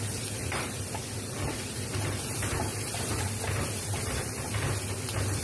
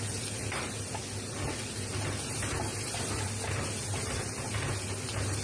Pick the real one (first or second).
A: second